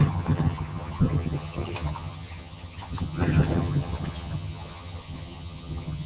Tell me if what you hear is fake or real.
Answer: fake